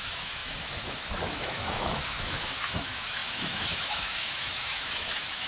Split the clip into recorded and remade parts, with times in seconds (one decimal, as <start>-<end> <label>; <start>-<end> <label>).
0.0-5.5 remade